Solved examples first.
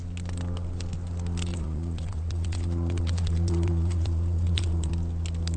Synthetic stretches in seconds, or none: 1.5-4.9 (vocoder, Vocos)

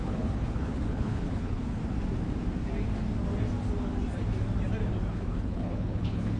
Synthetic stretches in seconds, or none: 0.0-1.8 (codec, HILCodec); 5.1-6.4